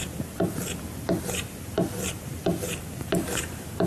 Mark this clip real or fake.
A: real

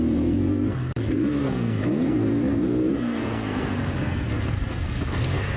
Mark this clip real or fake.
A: fake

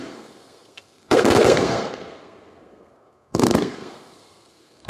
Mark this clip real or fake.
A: fake